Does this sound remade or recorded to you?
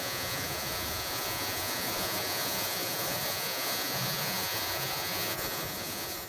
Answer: remade